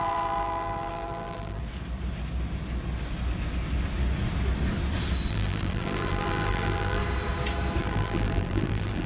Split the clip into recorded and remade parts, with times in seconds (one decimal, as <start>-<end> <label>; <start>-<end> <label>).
0.0-1.6 remade; 1.6-5.3 recorded; 5.3-7.0 remade; 7.0-7.8 recorded; 7.8-9.1 remade